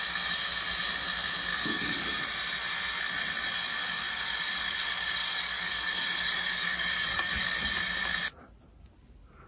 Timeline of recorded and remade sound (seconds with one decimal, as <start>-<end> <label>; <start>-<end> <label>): 0.0-1.5 recorded; 1.5-2.2 remade; 2.2-3.7 recorded; 3.7-7.6 remade; 7.6-9.5 recorded